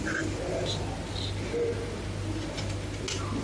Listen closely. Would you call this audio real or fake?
real